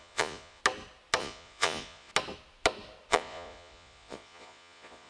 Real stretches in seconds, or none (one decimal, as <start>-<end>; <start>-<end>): 0.6-1.2; 2.1-3.1